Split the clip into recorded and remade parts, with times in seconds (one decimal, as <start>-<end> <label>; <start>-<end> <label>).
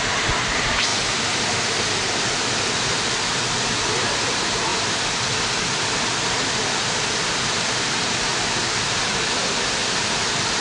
0.0-10.6 recorded